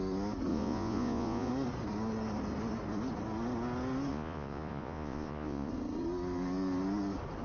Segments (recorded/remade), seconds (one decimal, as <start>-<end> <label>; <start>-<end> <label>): 0.0-0.5 recorded; 0.5-1.5 remade; 1.5-4.1 recorded; 4.1-5.7 remade; 5.7-7.4 recorded